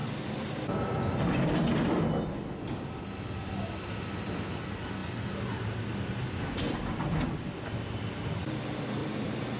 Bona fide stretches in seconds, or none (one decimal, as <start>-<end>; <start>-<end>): 0.0-9.6